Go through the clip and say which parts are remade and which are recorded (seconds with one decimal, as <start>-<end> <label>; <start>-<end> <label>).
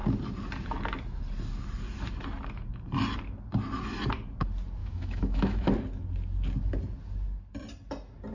0.0-4.8 recorded; 4.8-5.7 remade; 5.7-8.3 recorded